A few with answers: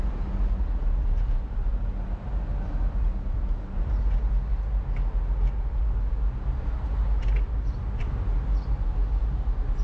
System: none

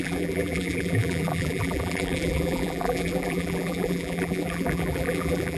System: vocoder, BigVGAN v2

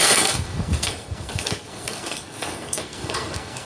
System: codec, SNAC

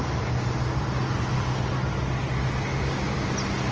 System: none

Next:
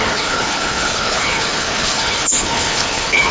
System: codec, HILCodec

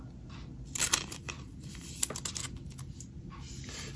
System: none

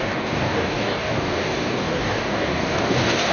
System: codec, DAC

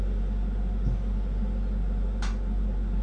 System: none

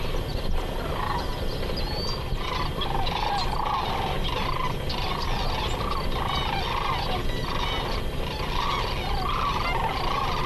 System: none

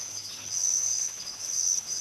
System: codec, HILCodec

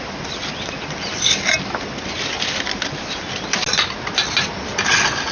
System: none